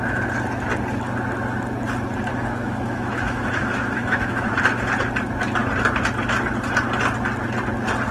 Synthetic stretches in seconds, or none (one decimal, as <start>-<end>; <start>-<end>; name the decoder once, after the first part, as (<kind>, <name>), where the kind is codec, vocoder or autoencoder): 2.3-4.5 (autoencoder, DAC-VAE)